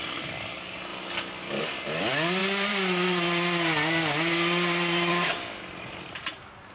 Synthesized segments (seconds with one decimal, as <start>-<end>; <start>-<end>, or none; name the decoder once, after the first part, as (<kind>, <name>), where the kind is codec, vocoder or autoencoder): 0.0-0.9 (vocoder, BigVGAN v2); 1.6-6.7